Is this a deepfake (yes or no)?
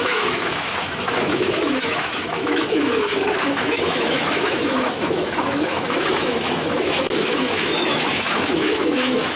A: yes